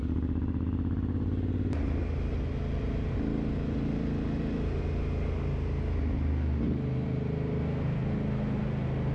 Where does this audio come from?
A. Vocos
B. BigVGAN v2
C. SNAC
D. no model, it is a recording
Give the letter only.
D